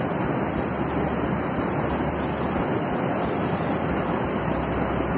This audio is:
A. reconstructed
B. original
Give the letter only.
B